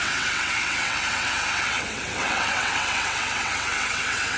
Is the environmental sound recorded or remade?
remade